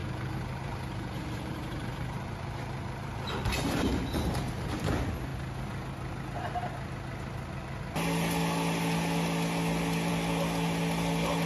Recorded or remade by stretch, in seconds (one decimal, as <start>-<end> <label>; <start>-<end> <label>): 0.0-4.5 remade; 4.5-11.5 recorded